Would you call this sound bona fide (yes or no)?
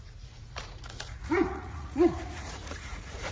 no